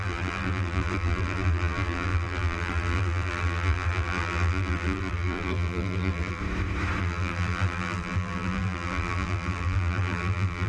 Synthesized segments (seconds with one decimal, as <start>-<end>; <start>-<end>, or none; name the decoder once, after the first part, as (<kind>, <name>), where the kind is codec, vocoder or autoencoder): 0.0-6.4 (vocoder, BigVGAN v2); 7.0-10.7